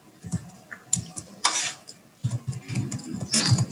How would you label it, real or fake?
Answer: real